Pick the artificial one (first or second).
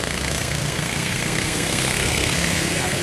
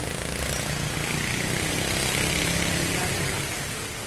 first